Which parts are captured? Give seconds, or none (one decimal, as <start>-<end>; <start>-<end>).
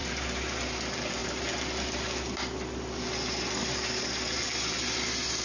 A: 0.5-1.2; 4.4-5.4